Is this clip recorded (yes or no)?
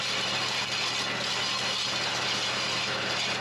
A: yes